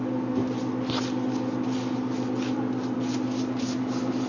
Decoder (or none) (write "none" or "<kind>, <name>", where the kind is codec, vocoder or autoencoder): none